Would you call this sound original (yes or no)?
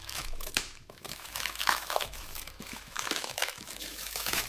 no